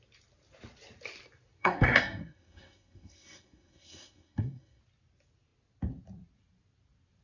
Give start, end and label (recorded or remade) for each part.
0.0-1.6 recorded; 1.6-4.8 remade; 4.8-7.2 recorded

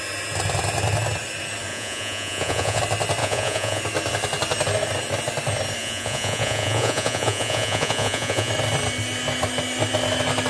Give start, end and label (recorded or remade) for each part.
0.0-1.7 recorded; 1.7-2.8 remade; 2.8-3.2 recorded; 3.2-3.8 remade; 3.8-5.8 recorded; 5.8-8.5 remade; 8.5-10.5 recorded

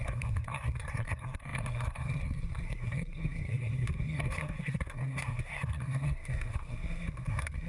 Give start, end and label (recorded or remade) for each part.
0.0-7.7 remade

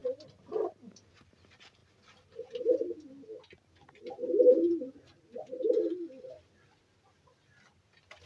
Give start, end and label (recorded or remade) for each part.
0.0-8.3 recorded

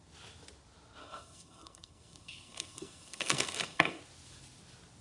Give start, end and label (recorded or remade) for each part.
0.0-1.0 recorded; 1.0-4.0 remade; 4.0-5.0 recorded

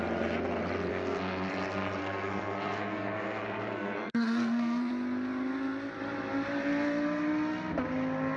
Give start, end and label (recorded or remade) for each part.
0.0-0.9 recorded; 0.9-1.5 remade; 1.5-2.0 recorded; 2.0-4.9 remade; 4.9-8.4 recorded

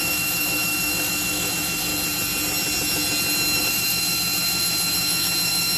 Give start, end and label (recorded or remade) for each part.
0.0-1.9 remade; 1.9-3.6 recorded; 3.6-5.8 remade

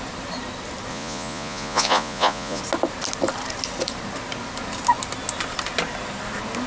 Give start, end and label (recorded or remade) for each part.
0.0-0.9 recorded; 0.9-2.6 remade; 2.6-6.7 recorded